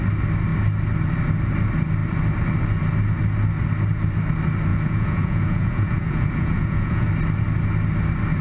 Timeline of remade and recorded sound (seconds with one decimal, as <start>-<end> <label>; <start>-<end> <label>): 0.0-4.7 recorded; 4.7-7.1 remade; 7.1-8.4 recorded